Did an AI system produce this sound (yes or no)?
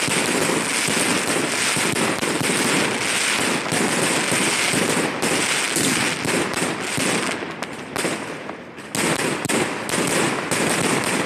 no